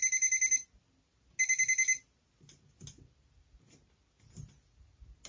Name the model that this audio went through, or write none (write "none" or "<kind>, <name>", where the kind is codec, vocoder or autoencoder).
none